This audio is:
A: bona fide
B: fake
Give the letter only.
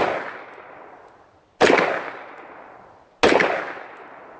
A